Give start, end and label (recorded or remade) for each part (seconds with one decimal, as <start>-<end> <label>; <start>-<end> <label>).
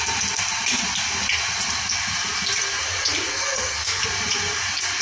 0.0-3.3 recorded; 3.3-4.0 remade; 4.0-5.0 recorded